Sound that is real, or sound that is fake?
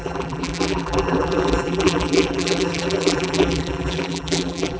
fake